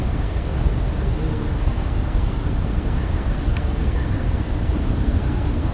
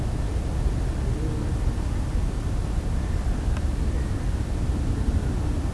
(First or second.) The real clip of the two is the second